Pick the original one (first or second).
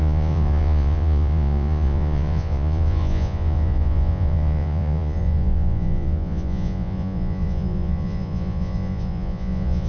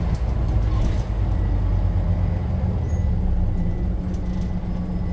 second